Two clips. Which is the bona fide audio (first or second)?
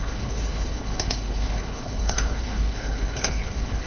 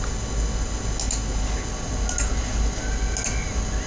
second